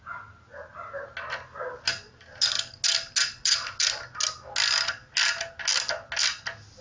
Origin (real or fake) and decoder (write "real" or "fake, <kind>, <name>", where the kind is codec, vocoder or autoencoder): real